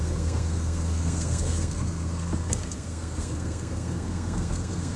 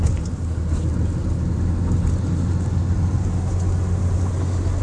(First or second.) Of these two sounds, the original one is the second